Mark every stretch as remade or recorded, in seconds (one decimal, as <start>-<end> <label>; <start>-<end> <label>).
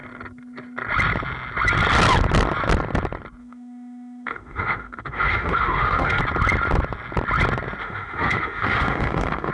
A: 0.0-3.4 recorded; 3.4-6.2 remade; 6.2-7.8 recorded; 7.8-9.5 remade